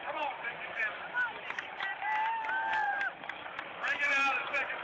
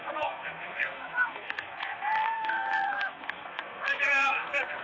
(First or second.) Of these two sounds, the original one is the first